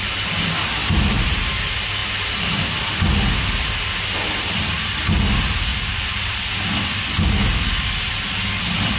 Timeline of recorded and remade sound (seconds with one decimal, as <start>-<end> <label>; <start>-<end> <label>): 0.0-0.8 recorded; 0.8-1.4 remade; 1.4-5.7 recorded; 5.7-6.5 remade; 6.5-9.0 recorded